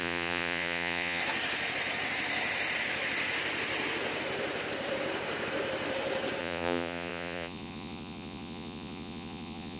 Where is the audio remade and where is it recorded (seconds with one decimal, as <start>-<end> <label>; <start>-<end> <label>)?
0.0-1.2 remade; 1.2-6.4 recorded; 6.4-9.8 remade